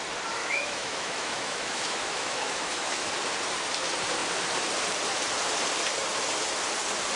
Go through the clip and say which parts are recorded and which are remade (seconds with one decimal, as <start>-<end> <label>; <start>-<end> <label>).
0.0-0.4 recorded; 0.4-3.1 remade; 3.1-7.2 recorded